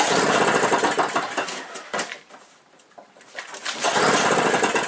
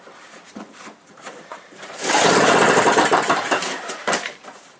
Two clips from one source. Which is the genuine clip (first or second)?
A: first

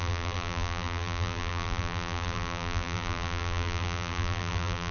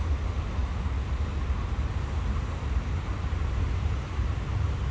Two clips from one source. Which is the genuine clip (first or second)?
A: second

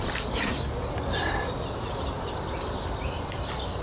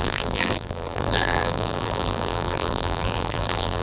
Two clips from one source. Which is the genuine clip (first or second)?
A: first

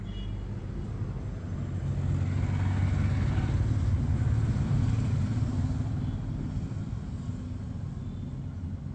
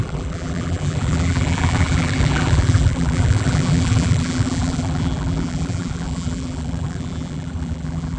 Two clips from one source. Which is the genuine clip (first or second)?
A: first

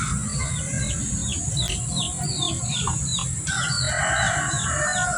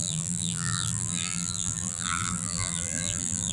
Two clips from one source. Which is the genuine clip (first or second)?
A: first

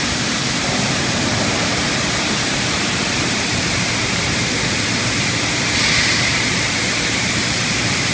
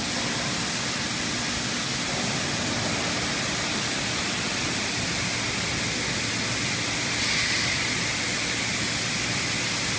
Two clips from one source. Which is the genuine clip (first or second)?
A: second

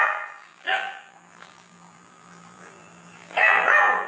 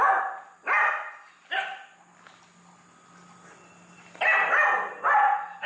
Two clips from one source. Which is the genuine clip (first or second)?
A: second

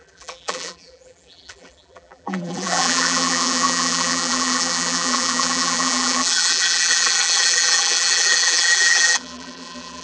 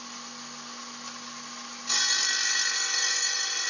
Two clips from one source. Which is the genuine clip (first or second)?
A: second